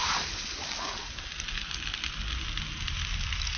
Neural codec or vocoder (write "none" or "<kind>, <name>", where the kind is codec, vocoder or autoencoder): none